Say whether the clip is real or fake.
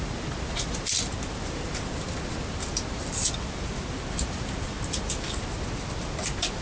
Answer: real